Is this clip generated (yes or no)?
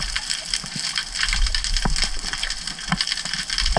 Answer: no